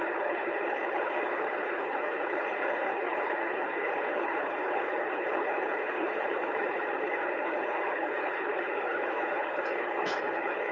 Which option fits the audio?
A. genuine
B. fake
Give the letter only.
B